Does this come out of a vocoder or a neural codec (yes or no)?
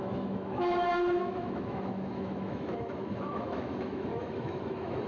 yes